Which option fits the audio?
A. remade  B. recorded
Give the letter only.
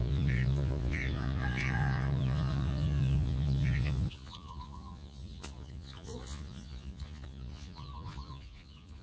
A